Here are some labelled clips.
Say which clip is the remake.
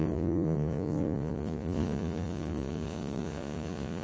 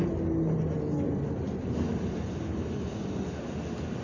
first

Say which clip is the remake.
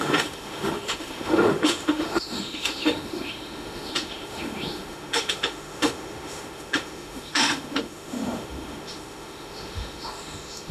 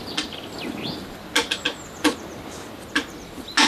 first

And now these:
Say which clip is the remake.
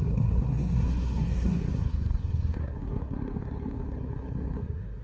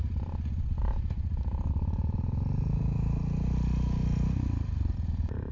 first